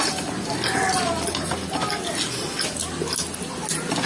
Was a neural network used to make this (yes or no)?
no